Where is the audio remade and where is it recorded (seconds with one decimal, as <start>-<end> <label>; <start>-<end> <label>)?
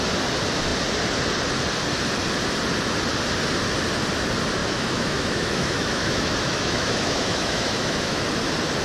0.0-4.6 recorded; 4.6-8.2 remade; 8.2-8.8 recorded